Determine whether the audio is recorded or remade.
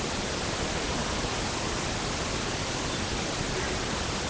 recorded